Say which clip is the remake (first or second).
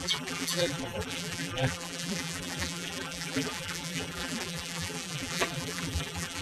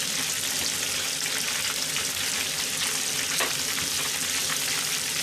first